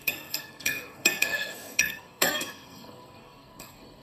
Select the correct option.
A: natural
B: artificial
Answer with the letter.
B